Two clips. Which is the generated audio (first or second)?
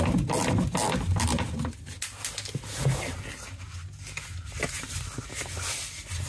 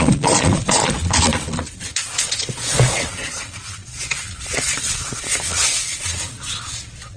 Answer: second